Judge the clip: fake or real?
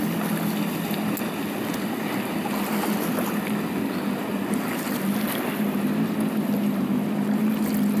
real